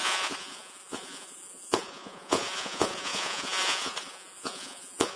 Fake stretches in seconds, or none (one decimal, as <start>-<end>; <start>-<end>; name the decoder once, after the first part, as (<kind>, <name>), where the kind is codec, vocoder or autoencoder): 0.0-5.2 (vocoder, Vocos)